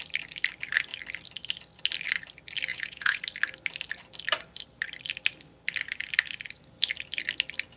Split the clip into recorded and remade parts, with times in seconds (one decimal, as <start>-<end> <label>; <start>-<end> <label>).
0.0-2.7 recorded; 2.7-3.2 remade; 3.2-7.8 recorded